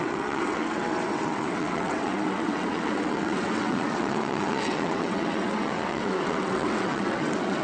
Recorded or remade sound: remade